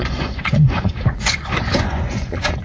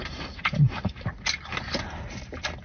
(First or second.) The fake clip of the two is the first